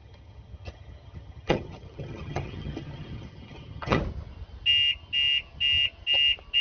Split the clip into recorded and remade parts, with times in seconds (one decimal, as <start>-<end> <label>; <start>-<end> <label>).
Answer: 0.0-4.0 remade; 4.0-6.6 recorded